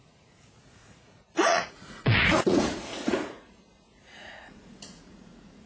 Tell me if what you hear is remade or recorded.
remade